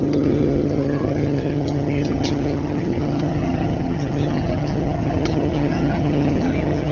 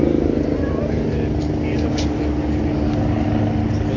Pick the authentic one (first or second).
second